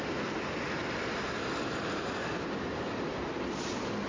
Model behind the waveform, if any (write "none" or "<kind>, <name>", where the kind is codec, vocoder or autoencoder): none